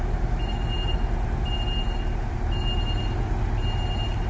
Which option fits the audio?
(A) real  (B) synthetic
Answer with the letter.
A